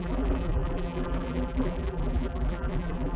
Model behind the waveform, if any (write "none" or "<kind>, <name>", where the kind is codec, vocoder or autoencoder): vocoder, BigVGAN v2